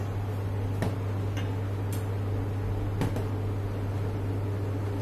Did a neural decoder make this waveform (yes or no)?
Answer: no